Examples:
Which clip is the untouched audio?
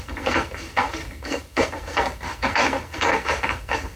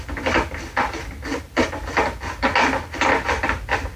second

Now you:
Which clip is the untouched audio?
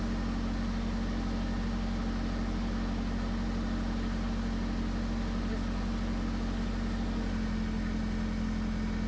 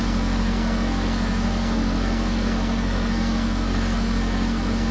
first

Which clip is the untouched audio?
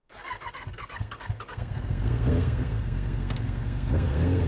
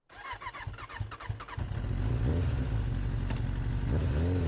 second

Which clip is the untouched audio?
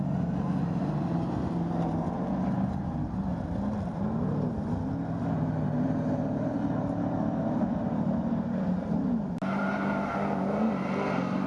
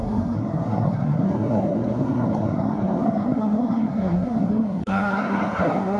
first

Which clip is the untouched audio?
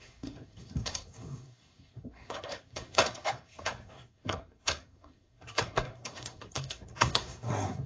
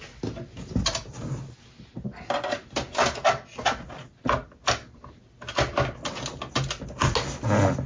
second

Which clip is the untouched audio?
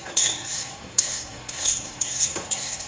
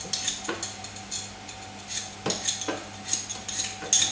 second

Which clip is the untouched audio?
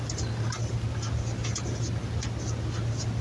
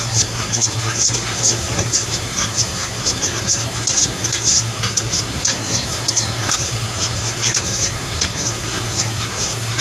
first